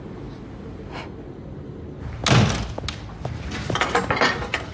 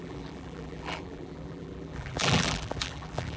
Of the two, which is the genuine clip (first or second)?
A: first